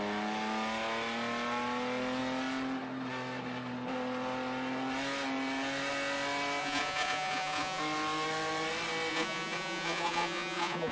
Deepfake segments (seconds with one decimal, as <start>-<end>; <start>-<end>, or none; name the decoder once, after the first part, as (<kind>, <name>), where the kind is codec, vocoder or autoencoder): 6.6-7.8 (vocoder, Vocos); 9.1-10.9